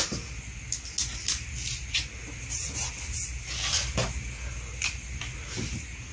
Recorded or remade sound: recorded